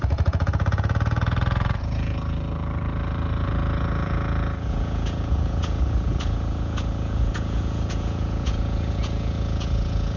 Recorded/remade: remade